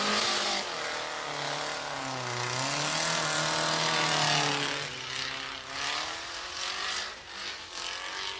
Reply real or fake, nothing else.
real